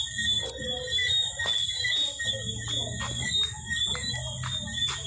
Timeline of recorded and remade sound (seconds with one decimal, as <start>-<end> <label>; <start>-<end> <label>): 0.0-5.1 recorded